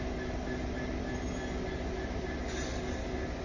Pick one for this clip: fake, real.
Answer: real